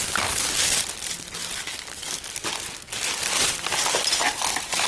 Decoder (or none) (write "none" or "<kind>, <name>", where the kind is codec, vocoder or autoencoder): none